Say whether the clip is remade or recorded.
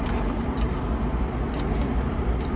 recorded